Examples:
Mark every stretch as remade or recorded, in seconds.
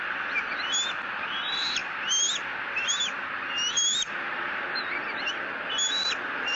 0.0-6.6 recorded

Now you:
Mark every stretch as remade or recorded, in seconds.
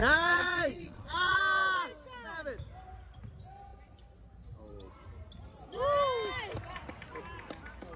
0.0-1.4 remade; 1.4-8.0 recorded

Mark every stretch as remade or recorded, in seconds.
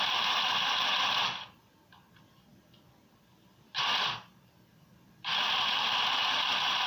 0.0-6.9 recorded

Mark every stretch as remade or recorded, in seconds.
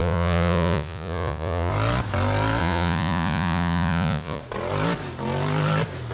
0.0-1.7 remade; 1.7-2.6 recorded; 2.6-4.4 remade; 4.4-6.1 recorded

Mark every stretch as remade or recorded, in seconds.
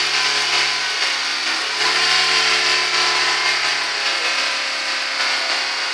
0.0-5.9 recorded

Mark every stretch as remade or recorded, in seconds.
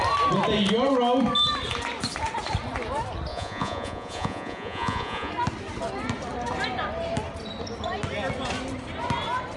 0.0-3.3 recorded; 3.3-5.3 remade; 5.3-9.6 recorded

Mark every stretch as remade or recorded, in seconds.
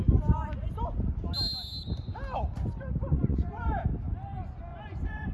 0.0-3.1 recorded; 3.1-3.8 remade; 3.8-4.7 recorded; 4.7-5.3 remade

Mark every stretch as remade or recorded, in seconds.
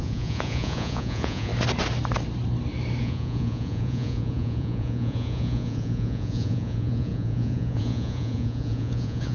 0.0-1.5 remade; 1.5-3.0 recorded; 3.0-9.3 remade